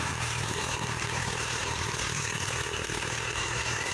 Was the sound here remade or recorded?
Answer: remade